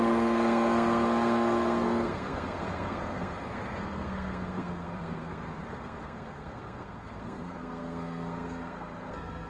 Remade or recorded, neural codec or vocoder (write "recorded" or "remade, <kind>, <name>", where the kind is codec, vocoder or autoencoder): remade, codec, SNAC